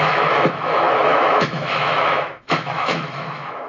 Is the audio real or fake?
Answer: fake